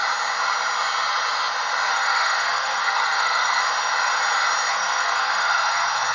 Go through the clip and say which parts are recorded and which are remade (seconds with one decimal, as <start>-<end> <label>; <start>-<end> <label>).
0.0-1.9 recorded; 1.9-3.6 remade; 3.6-4.7 recorded; 4.7-6.1 remade